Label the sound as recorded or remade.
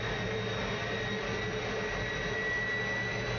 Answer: recorded